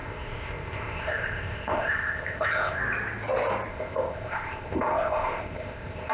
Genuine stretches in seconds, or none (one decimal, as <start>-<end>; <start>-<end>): 2.8-3.7